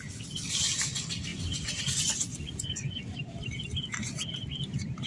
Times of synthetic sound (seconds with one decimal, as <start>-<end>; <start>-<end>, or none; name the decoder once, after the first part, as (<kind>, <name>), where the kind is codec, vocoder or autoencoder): 1.3-1.8 (vocoder, Vocos); 2.3-3.0